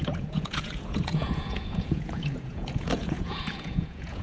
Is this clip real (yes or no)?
no